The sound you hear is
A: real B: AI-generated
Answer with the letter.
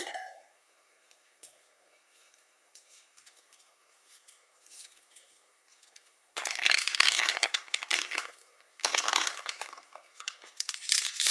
B